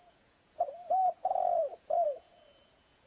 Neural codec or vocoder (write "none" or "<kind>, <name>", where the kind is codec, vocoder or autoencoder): vocoder, Vocos